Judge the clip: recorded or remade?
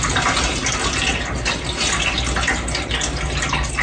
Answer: recorded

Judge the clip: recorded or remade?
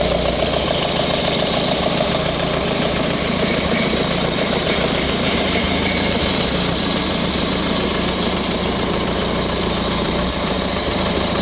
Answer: remade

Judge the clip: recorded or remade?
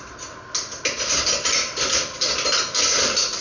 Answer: recorded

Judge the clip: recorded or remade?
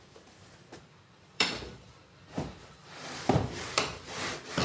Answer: remade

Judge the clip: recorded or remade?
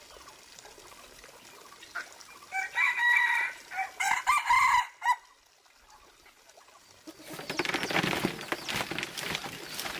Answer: recorded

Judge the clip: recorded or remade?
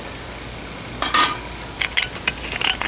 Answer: recorded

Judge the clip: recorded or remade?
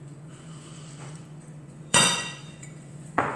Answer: remade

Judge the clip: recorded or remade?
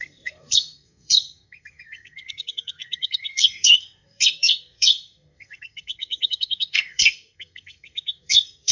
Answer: remade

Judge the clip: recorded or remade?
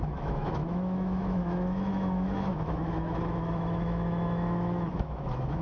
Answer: remade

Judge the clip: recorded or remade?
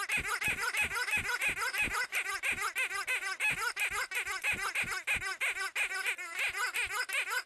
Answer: recorded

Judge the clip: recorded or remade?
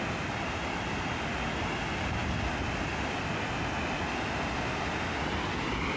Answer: recorded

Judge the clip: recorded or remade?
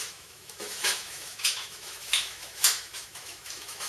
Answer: remade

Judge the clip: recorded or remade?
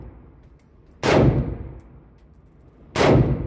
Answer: recorded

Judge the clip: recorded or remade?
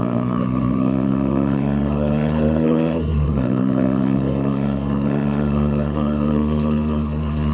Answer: remade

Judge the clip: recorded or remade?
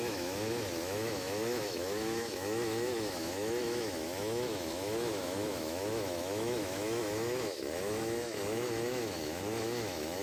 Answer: remade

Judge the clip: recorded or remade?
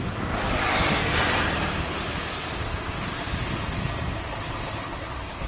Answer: recorded